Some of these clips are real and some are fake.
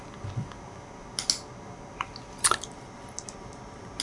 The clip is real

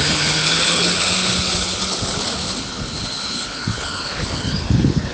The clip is fake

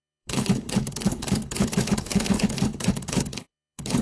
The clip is fake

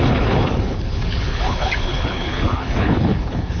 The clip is fake